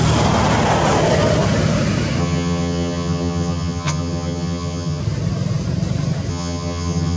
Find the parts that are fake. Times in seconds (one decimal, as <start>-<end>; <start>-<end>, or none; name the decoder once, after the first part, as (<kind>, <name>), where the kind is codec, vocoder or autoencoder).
2.2-5.0 (vocoder, HiFi-GAN); 6.3-7.2